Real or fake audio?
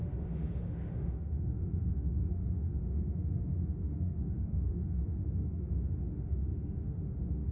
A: fake